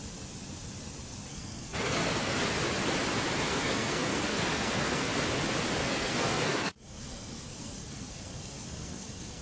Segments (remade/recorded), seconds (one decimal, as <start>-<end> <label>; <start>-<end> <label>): 0.0-1.3 recorded; 1.3-2.4 remade; 2.4-3.5 recorded; 3.5-5.1 remade; 5.1-5.8 recorded; 5.8-9.4 remade